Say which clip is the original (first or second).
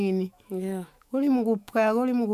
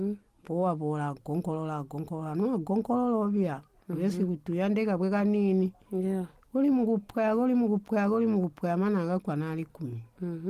second